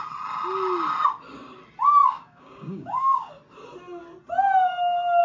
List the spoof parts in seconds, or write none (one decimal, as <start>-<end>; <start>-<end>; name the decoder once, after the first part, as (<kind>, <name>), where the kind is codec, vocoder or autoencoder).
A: 2.0-3.3 (codec, DAC)